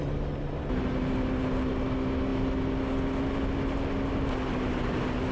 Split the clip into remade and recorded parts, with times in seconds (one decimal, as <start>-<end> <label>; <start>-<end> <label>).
0.0-5.3 recorded